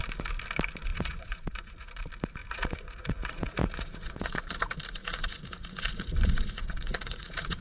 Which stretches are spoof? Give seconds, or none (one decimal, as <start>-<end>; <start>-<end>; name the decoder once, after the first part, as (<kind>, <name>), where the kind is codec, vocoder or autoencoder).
0.9-1.9 (vocoder, Vocos); 2.4-4.4; 5.0-7.6